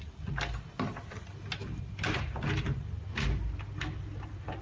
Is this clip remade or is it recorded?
recorded